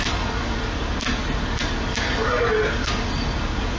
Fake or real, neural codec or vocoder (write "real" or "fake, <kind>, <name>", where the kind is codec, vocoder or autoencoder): real